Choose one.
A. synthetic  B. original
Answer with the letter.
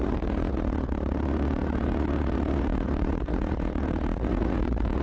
A